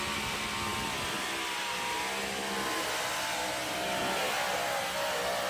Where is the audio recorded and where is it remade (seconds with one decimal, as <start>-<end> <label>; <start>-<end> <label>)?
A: 0.0-5.5 recorded